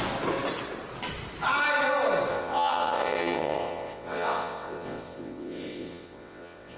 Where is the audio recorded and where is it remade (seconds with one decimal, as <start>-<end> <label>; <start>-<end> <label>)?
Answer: 0.0-2.3 recorded; 2.3-6.8 remade

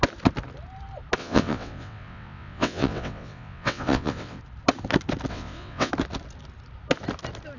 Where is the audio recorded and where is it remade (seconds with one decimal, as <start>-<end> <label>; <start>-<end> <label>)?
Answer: 0.0-1.2 recorded; 1.2-4.4 remade; 4.4-5.3 recorded; 5.3-5.9 remade; 5.9-7.6 recorded

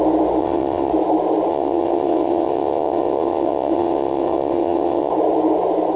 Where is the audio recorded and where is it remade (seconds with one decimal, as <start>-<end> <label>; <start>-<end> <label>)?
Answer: 0.0-0.4 recorded; 0.4-0.9 remade; 0.9-1.5 recorded; 1.5-5.1 remade; 5.1-6.0 recorded

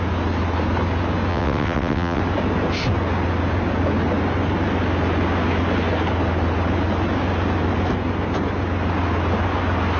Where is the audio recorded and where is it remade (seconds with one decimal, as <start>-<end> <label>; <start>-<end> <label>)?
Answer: 0.0-1.3 recorded; 1.3-2.2 remade; 2.2-10.0 recorded